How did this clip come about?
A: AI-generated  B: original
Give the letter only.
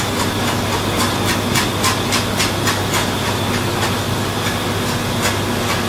B